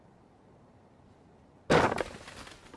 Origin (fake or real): real